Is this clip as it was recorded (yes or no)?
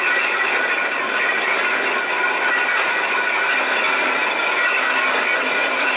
yes